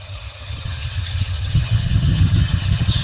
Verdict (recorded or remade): remade